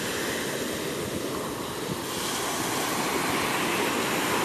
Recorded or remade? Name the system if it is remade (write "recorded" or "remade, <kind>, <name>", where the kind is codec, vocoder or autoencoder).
recorded